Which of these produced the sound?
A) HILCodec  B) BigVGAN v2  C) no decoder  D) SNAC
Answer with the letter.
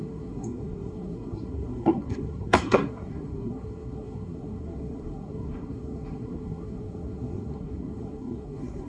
D